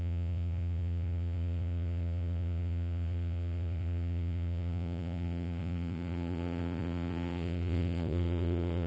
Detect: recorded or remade remade